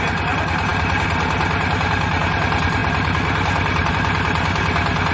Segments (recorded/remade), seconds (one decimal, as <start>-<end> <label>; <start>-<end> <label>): 0.0-5.1 recorded